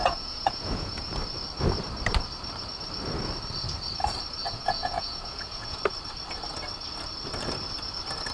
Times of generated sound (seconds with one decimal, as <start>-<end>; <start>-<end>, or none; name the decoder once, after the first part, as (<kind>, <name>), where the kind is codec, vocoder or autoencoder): 0.0-1.1 (vocoder, Vocos); 4.4-5.8